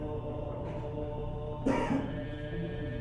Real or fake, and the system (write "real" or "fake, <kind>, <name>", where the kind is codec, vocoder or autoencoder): real